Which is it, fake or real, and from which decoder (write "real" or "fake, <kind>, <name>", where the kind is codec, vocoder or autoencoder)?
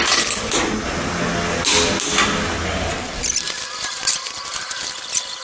real